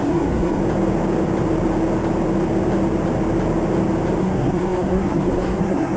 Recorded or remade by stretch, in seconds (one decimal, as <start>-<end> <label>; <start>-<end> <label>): 0.0-0.6 remade; 0.6-4.2 recorded; 4.2-6.0 remade